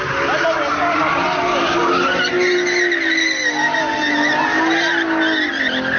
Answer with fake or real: real